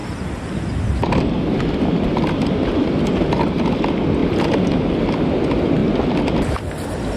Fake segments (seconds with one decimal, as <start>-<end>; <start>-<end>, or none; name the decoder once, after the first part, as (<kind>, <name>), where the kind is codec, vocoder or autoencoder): 0.0-0.5 (vocoder, BigVGAN v2); 2.1-3.1; 4.2-4.9